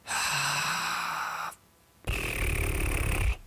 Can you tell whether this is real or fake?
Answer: real